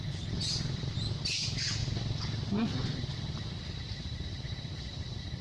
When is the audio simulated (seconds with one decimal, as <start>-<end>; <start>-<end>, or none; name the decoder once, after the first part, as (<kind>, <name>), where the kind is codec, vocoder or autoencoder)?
none